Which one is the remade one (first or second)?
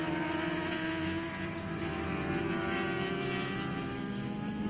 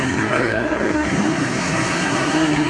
second